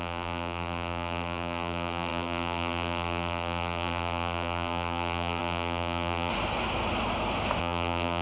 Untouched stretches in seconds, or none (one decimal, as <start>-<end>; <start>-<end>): 6.3-7.6